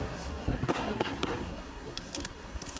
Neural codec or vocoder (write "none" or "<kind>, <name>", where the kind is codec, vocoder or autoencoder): codec, SNAC